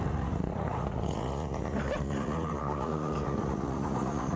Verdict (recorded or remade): remade